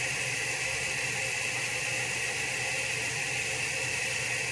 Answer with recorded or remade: recorded